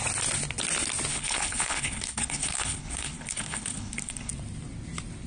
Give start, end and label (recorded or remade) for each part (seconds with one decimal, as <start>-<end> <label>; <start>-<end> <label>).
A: 0.0-1.1 recorded; 1.1-4.3 remade; 4.3-5.3 recorded